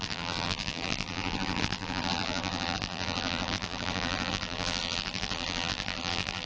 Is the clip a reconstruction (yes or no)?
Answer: yes